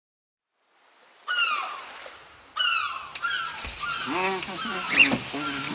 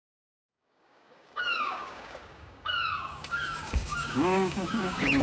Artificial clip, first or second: second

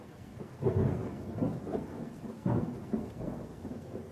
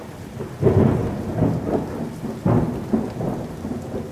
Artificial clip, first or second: first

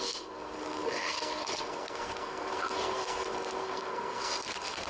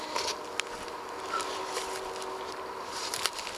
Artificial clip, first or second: first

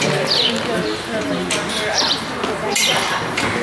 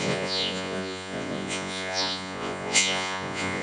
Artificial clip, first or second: second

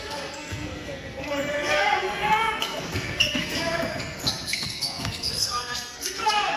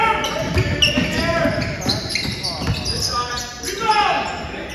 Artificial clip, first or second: first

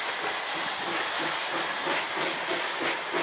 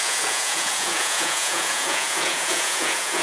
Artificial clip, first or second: second